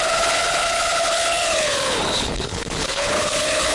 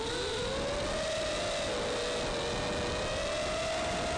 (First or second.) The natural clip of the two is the second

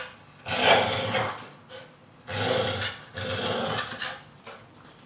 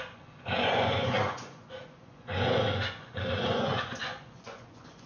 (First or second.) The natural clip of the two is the first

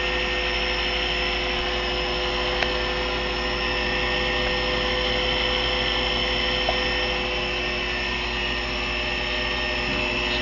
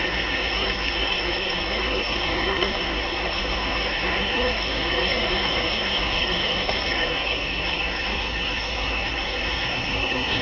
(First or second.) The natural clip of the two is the first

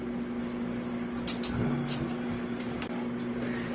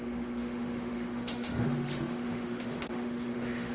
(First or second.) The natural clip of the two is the first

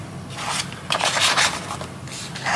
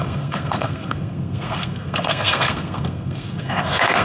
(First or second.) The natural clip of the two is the first